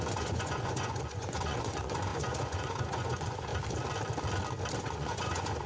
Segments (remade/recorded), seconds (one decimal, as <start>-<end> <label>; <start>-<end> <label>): 0.0-3.5 remade; 3.5-4.8 recorded; 4.8-5.7 remade

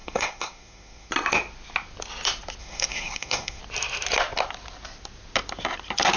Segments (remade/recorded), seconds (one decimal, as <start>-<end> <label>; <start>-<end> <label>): 0.0-1.1 remade; 1.1-2.6 recorded; 2.6-3.6 remade; 3.6-6.2 recorded